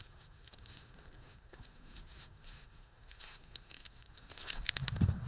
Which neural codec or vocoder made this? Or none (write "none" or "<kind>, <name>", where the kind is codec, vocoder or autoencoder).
codec, SNAC